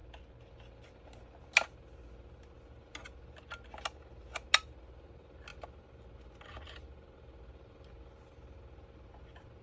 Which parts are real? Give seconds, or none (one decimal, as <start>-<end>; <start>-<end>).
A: 0.0-9.6